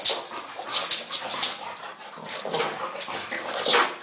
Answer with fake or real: real